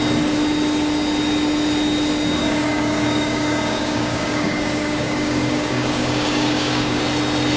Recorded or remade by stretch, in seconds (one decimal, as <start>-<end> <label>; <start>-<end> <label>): 0.0-2.4 recorded; 2.4-7.0 remade; 7.0-7.6 recorded